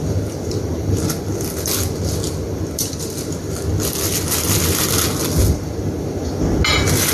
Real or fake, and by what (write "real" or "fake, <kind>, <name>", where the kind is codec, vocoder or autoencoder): real